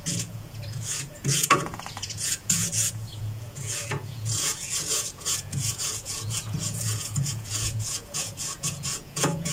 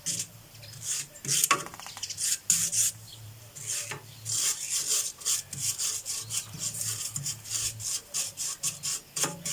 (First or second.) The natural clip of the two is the second